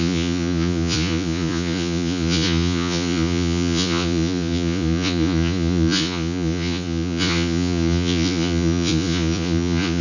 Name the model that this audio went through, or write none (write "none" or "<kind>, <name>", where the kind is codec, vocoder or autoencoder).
vocoder, Vocos